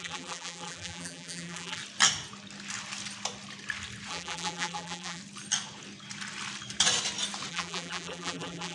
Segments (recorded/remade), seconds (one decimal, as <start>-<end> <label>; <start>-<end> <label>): 0.0-1.8 remade; 1.8-4.1 recorded; 4.1-5.2 remade; 5.2-7.5 recorded; 7.5-8.7 remade